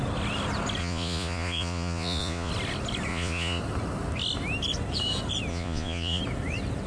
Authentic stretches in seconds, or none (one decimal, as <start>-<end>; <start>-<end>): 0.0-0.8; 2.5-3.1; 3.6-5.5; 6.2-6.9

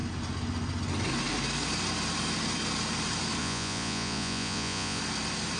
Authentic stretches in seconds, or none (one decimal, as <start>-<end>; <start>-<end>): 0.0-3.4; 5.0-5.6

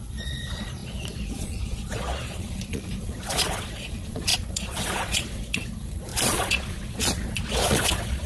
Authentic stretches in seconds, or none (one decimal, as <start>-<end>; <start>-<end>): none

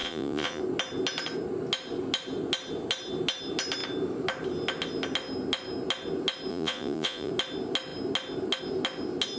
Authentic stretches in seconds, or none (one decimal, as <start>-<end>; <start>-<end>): 0.6-6.5; 7.3-9.4

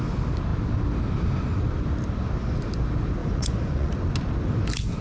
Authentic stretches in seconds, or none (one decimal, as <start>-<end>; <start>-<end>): 0.0-3.2; 3.9-5.0

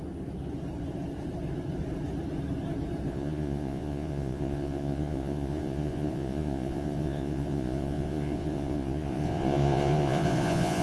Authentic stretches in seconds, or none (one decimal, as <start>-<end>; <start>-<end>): 0.0-3.1

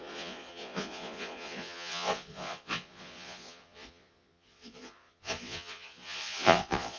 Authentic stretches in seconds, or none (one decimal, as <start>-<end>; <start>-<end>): none